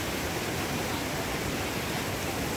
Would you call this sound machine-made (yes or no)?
no